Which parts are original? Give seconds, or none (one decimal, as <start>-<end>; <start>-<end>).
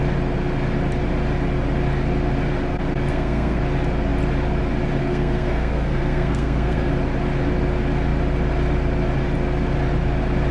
0.0-3.1; 3.6-5.0; 6.9-10.5